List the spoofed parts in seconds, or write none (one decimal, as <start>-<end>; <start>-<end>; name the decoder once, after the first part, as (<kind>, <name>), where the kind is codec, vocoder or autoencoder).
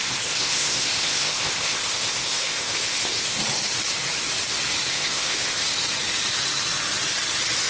0.0-3.4 (codec, ZipCodec); 4.9-5.8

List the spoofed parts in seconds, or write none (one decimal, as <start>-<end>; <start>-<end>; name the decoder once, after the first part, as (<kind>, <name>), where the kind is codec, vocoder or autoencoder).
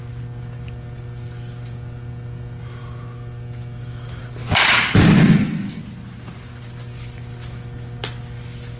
5.2-5.8 (codec, SNAC)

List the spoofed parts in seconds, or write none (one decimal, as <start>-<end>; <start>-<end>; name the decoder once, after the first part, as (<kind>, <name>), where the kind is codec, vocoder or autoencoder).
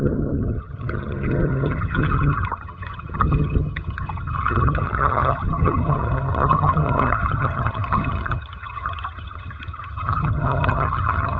0.0-11.4 (vocoder, HiFi-GAN)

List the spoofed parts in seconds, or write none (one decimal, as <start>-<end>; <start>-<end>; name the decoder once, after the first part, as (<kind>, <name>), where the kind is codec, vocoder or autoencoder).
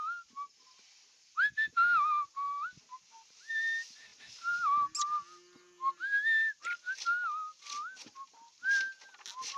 none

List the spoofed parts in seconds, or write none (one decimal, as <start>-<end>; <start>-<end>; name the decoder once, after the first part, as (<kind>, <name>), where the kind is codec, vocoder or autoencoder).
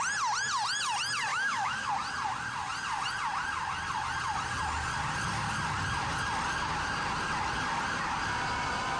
1.3-1.9 (autoencoder, DAC-VAE)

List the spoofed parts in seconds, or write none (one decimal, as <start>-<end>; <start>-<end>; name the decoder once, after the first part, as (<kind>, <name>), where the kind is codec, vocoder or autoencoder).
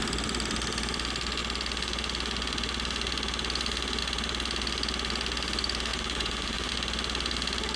5.9-6.7 (vocoder, Vocos)